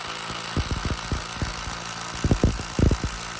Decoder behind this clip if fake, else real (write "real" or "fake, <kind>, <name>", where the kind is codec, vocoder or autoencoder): real